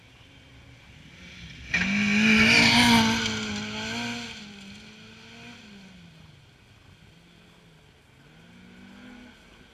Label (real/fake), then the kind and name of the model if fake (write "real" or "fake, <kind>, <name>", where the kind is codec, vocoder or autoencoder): real